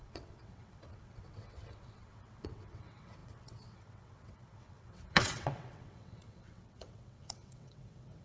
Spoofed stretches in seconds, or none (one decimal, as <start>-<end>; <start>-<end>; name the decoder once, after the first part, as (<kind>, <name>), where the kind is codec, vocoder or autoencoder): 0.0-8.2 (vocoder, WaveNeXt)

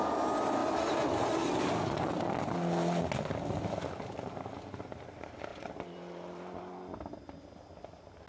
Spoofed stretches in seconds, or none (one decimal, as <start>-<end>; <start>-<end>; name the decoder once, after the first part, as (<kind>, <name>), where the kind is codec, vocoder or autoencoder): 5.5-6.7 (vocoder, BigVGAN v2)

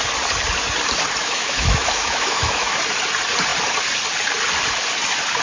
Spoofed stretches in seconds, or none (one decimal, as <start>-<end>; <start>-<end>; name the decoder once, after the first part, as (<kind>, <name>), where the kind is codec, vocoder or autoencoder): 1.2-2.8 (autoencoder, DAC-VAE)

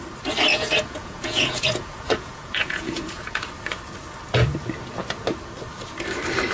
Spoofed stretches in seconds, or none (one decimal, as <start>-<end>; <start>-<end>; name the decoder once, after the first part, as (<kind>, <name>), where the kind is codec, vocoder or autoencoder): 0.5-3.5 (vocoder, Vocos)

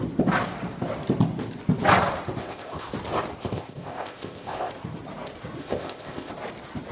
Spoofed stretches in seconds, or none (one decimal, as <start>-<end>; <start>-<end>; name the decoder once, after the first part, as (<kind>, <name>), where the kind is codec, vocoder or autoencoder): 2.4-2.9 (codec, ZipCodec); 3.4-4.7; 5.6-6.3

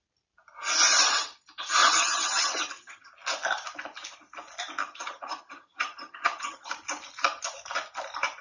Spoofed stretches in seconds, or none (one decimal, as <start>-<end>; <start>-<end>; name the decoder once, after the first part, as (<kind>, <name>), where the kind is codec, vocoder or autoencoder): 1.8-3.1 (vocoder, HiFi-GAN); 4.8-6.7